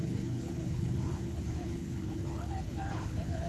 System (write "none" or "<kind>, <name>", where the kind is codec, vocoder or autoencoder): codec, HILCodec